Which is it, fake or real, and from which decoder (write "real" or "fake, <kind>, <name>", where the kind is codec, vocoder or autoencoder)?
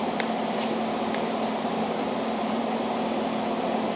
fake, vocoder, BigVGAN v2